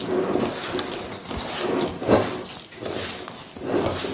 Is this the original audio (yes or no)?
yes